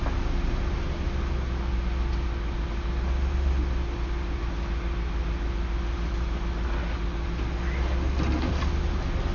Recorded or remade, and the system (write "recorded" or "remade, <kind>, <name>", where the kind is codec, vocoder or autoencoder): recorded